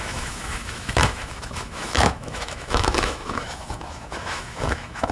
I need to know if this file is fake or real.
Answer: fake